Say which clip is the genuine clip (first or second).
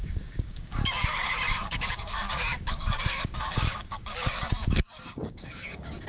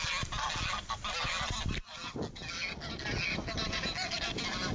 second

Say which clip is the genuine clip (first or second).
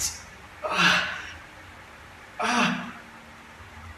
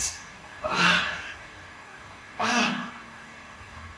first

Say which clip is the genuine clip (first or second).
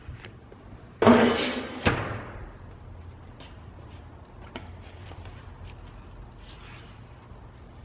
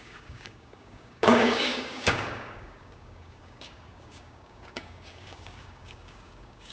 first